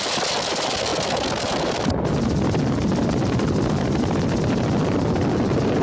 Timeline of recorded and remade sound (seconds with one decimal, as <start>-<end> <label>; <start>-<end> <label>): 0.0-5.8 recorded